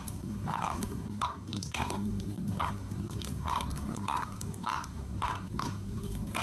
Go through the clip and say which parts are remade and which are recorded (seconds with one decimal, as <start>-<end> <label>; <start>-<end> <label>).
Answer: 0.0-6.4 remade